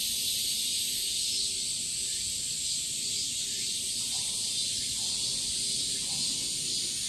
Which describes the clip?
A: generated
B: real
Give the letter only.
B